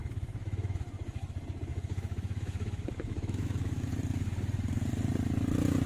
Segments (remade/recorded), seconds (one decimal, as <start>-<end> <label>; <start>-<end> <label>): 0.0-0.9 remade; 0.9-1.7 recorded; 1.7-3.9 remade; 3.9-5.9 recorded